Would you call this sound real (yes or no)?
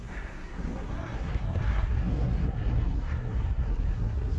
no